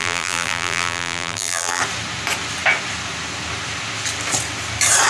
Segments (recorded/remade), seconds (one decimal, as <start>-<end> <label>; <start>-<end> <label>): 0.0-1.8 remade; 1.8-5.1 recorded